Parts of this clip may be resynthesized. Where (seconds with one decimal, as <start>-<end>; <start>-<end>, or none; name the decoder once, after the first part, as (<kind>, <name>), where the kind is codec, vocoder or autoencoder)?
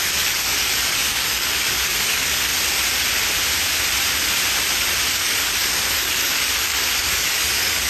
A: 0.0-2.5 (codec, DAC); 5.1-7.9